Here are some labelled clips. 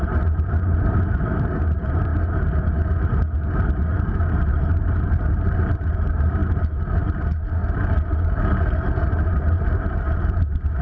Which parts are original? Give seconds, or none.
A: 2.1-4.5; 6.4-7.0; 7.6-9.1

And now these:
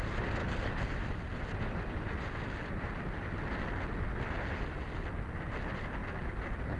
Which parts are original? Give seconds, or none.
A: 0.0-6.8

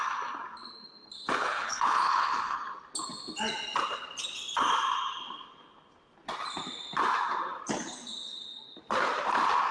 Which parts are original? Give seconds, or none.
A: 0.0-1.4; 2.6-9.7